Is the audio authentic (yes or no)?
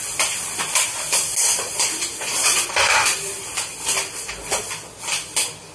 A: yes